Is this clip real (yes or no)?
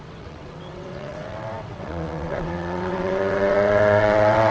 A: no